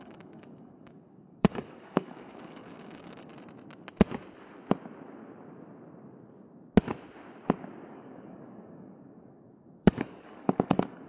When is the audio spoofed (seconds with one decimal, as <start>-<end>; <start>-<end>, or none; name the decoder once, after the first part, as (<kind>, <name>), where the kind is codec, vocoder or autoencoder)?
0.0-3.3 (codec, DAC); 7.9-11.1